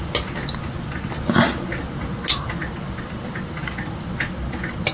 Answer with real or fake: real